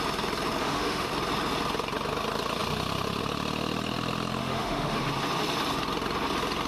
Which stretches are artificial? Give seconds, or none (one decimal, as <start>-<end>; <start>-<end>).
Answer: 0.6-1.1; 4.4-5.0